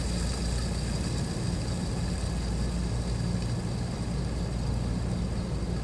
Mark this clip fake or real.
real